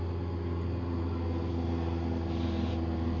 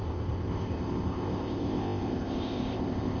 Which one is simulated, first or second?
second